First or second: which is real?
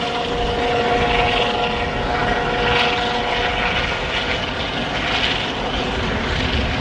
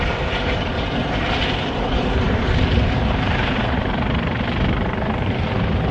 first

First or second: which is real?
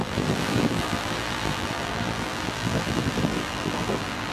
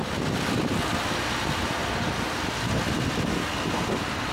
second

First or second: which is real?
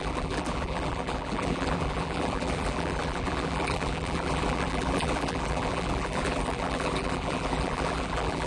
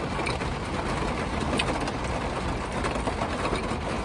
second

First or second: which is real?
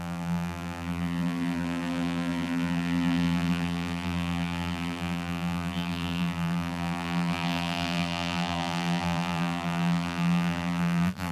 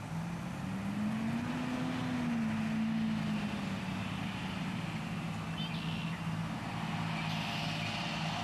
second